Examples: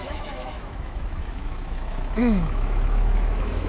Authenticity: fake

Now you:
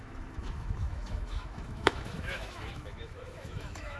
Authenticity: fake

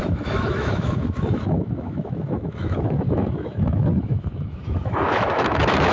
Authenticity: fake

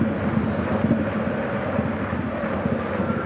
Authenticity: real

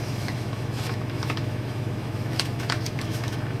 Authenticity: fake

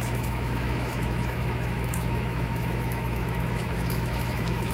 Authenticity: fake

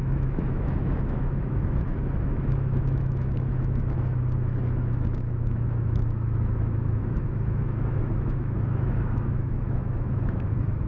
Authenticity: fake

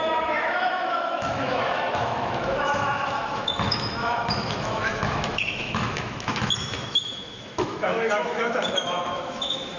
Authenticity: fake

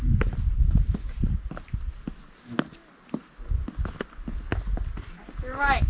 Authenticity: real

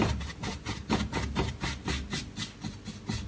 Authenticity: real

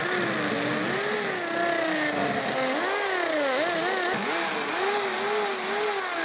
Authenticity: real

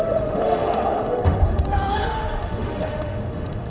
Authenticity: fake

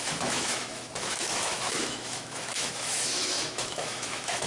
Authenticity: fake